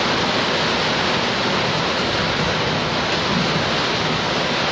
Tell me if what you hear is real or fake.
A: real